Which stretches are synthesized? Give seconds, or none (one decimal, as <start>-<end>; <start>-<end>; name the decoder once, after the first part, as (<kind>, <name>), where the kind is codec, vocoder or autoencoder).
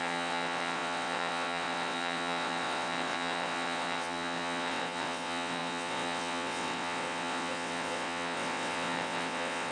0.0-9.7 (vocoder, WaveNeXt)